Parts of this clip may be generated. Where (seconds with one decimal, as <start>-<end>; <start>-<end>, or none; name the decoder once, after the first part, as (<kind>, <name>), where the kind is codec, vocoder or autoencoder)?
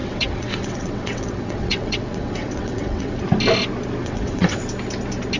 0.0-3.2 (vocoder, WaveNeXt); 4.0-4.6